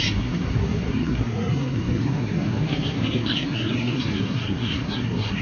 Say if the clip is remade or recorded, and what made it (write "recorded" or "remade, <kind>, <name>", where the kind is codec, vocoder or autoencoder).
remade, codec, SNAC